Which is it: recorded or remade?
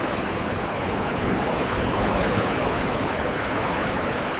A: remade